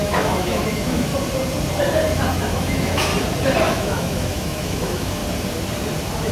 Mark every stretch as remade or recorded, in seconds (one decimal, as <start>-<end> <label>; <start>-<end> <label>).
0.0-1.1 remade; 1.1-2.4 recorded; 2.4-3.1 remade; 3.1-3.7 recorded; 3.7-5.2 remade; 5.2-6.3 recorded